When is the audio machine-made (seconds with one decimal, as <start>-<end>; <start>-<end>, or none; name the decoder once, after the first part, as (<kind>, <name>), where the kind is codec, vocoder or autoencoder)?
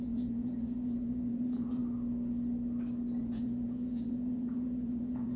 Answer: 0.0-1.8 (vocoder, Vocos); 3.2-5.4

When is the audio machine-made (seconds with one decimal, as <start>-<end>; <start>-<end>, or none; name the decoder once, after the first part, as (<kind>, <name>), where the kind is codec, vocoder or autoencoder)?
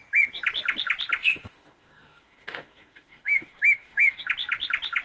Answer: 1.2-4.2 (autoencoder, DAC-VAE)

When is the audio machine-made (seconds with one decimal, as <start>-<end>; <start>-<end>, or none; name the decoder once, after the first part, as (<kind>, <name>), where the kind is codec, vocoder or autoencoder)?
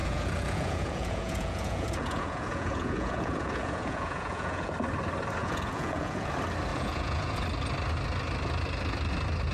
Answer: 0.0-4.7 (vocoder, Vocos); 5.4-6.3; 6.7-7.4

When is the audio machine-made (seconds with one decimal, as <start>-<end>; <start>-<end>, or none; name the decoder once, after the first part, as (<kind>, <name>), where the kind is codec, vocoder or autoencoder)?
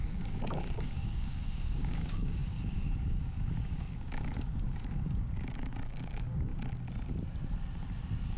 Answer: 0.0-6.5 (codec, DAC)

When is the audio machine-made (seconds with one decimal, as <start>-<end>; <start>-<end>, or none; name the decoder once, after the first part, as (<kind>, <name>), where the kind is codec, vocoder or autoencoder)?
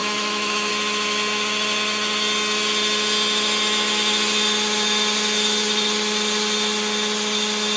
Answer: 0.0-0.7 (autoencoder, DAC-VAE)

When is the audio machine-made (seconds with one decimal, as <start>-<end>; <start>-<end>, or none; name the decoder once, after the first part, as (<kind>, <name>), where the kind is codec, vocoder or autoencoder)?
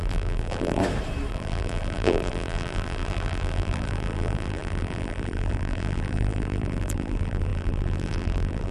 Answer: 0.0-0.8 (vocoder, BigVGAN v2); 1.3-8.7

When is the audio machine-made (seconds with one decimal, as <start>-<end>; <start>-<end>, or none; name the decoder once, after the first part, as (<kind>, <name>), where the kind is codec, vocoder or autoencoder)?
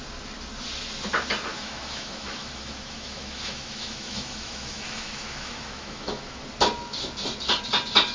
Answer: 1.5-6.4 (autoencoder, DAC-VAE)